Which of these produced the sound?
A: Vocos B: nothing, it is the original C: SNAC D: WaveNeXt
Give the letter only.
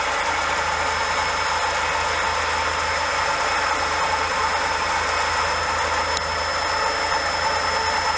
B